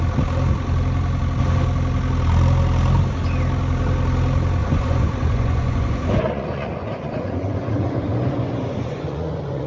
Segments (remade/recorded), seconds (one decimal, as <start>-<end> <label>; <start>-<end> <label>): 0.0-4.6 recorded; 4.6-9.7 remade